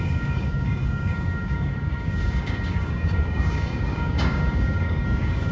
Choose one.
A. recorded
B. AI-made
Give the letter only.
B